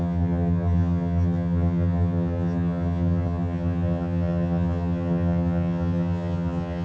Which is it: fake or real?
fake